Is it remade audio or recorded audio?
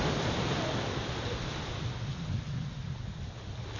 recorded